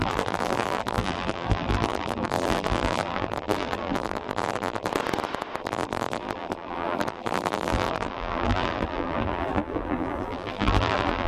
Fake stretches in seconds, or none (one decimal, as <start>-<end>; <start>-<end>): 0.0-4.9; 5.6-11.3